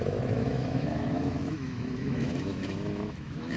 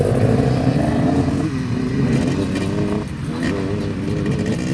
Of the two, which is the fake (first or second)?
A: first